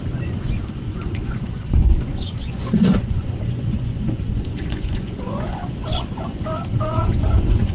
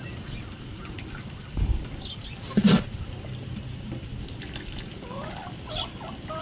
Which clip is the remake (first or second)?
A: first